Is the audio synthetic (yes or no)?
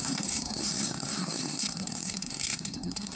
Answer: yes